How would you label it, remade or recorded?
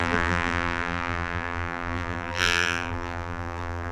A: remade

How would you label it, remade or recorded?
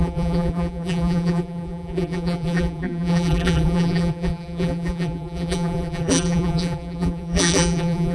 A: remade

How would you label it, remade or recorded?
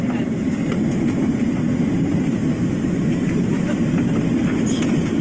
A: remade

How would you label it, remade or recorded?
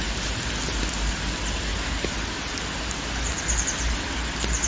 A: recorded